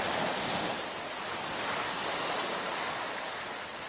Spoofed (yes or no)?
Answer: no